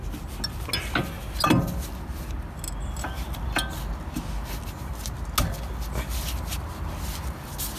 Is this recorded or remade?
recorded